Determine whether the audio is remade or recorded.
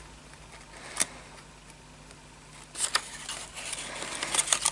recorded